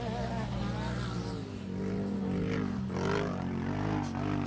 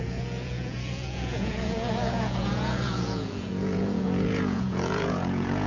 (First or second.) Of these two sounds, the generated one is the second